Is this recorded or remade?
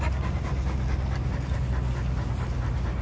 recorded